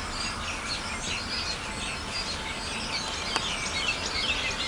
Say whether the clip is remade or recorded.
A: recorded